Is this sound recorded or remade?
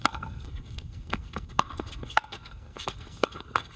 remade